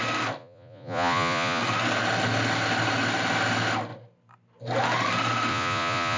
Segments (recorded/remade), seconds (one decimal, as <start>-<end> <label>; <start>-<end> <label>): 0.0-0.4 recorded; 0.4-1.6 remade; 1.6-5.5 recorded; 5.5-6.2 remade